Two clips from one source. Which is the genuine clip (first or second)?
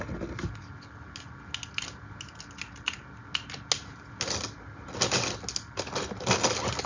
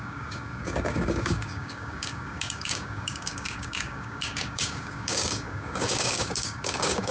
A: first